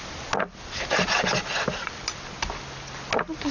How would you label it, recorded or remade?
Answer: recorded